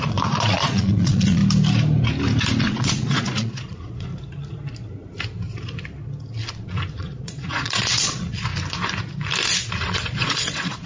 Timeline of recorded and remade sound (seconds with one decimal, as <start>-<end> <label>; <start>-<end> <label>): 0.0-1.4 remade; 1.4-2.6 recorded; 2.6-4.1 remade; 4.1-6.9 recorded; 6.9-8.5 remade; 8.5-9.7 recorded; 9.7-10.9 remade